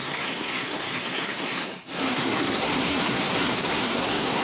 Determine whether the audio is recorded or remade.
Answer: remade